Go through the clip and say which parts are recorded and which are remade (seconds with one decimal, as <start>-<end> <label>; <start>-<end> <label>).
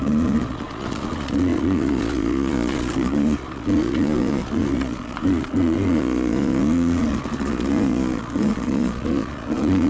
0.0-9.9 remade